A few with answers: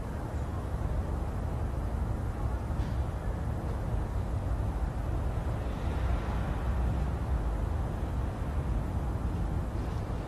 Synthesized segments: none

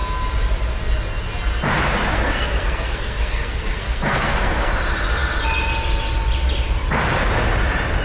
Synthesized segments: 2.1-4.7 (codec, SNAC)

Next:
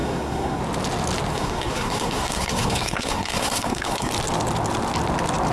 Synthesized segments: 0.0-0.6 (codec, SNAC); 1.3-4.1